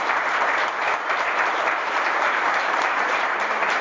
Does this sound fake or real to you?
fake